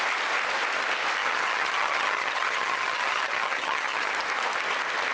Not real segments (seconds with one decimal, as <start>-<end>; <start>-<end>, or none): 1.2-4.1